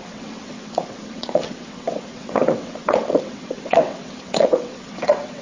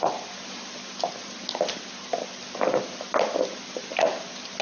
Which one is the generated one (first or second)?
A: first